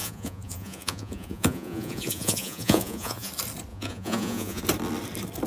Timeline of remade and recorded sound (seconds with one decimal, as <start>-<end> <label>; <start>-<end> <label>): 0.0-3.3 remade; 3.3-3.7 recorded; 3.7-4.6 remade; 4.6-5.5 recorded